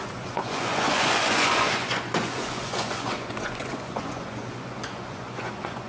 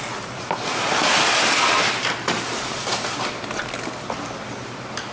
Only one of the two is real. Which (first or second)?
second